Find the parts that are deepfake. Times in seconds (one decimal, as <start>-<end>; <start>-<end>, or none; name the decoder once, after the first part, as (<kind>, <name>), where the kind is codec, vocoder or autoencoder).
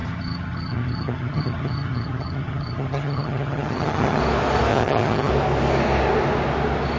0.0-4.2 (vocoder, HiFi-GAN); 4.7-5.3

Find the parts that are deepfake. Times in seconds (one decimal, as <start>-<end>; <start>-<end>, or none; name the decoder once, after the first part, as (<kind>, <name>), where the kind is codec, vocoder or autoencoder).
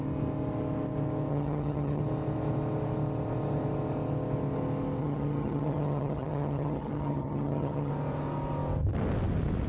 1.3-2.0 (vocoder, HiFi-GAN); 5.0-7.9